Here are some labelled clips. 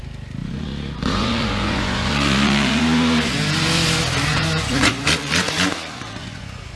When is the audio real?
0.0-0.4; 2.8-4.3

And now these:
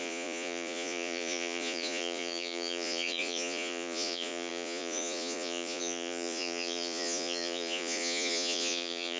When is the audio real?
none

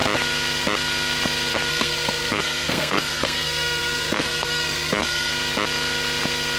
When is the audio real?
0.0-1.7; 5.3-6.6

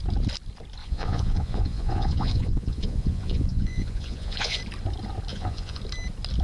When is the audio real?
0.0-0.8; 4.6-5.3; 5.8-6.4